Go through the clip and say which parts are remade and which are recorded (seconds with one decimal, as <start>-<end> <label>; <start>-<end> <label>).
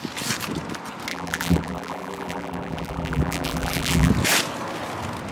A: 0.0-1.1 recorded; 1.1-4.1 remade; 4.1-5.3 recorded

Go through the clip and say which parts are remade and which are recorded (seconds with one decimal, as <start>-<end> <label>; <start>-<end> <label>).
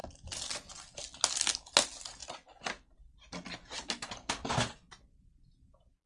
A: 0.0-0.7 remade; 0.7-2.2 recorded; 2.2-3.0 remade; 3.0-6.1 recorded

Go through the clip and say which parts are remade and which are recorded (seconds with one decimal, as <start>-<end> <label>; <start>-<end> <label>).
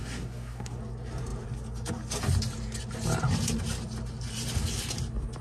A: 0.0-0.8 remade; 0.8-5.4 recorded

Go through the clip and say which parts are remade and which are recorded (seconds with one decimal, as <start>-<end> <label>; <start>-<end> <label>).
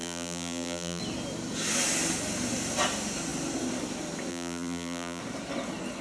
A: 0.0-1.0 remade; 1.0-4.3 recorded; 4.3-5.2 remade; 5.2-6.0 recorded